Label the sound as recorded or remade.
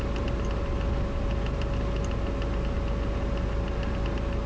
recorded